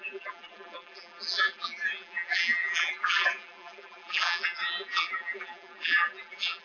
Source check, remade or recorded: remade